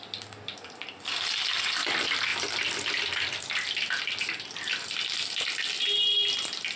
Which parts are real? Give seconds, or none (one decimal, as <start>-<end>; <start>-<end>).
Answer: 0.0-6.8